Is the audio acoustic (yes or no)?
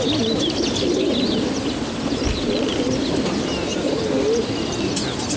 yes